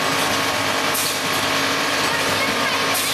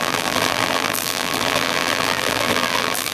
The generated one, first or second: second